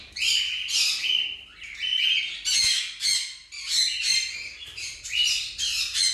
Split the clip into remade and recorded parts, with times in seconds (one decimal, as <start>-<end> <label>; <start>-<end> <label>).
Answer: 0.0-6.1 recorded